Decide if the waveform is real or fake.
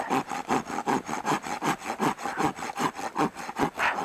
real